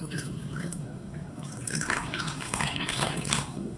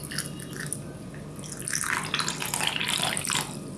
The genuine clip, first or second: second